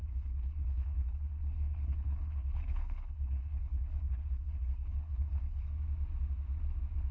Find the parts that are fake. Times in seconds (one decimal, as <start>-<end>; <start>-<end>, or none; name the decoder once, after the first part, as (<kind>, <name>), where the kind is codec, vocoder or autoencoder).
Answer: 0.0-5.7 (codec, HILCodec)